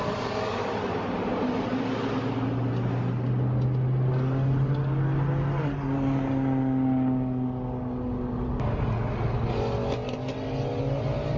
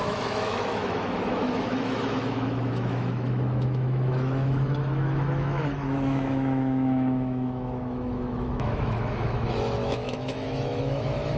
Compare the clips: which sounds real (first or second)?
first